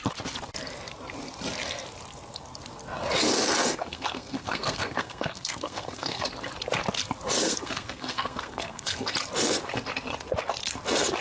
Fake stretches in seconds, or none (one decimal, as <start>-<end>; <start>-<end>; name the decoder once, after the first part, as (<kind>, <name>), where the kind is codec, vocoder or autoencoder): 3.7-6.3 (codec, SNAC); 7.4-9.1